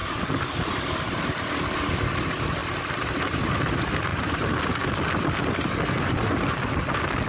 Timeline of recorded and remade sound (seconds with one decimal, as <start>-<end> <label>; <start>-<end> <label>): 0.0-4.1 recorded; 4.1-4.6 remade; 4.6-7.3 recorded